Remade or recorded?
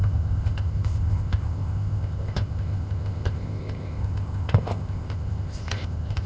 remade